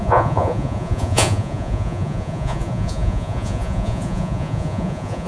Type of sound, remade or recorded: remade